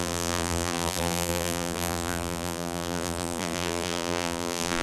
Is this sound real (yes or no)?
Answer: no